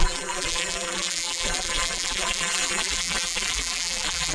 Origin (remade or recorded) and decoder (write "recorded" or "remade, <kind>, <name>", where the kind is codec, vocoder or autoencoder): remade, vocoder, BigVGAN v2